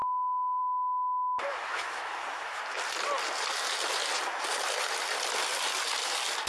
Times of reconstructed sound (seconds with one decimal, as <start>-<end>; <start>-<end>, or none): 0.0-0.6; 1.5-2.6